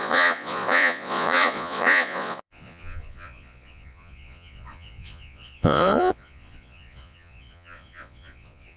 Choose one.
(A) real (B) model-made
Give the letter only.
B